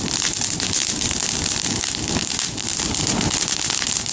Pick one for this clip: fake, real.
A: real